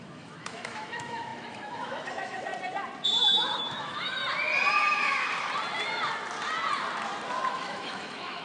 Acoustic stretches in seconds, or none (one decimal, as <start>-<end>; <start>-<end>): 2.5-3.2; 4.2-4.7; 5.2-7.5